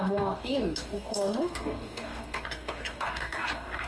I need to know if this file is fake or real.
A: fake